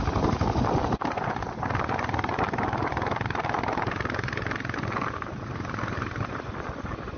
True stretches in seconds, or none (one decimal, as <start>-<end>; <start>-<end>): 0.0-7.2